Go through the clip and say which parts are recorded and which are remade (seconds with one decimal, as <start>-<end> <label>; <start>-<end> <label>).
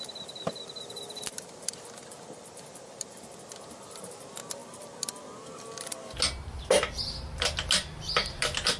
0.0-8.8 recorded